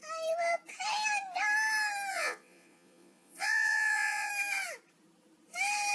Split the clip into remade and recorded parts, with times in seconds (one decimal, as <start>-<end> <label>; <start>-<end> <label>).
0.0-2.1 recorded; 2.1-4.3 remade; 4.3-5.9 recorded